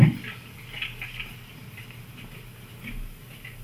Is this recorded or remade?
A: recorded